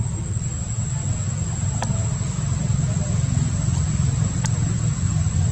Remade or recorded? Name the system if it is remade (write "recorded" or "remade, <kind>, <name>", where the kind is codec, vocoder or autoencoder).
recorded